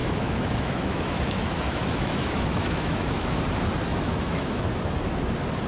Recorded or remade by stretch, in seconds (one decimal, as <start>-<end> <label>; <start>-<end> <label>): 0.0-3.4 remade; 3.4-3.9 recorded; 3.9-4.6 remade; 4.6-5.7 recorded